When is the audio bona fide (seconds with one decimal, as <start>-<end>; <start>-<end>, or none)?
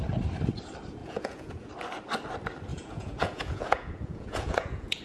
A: 0.0-1.0; 1.7-2.7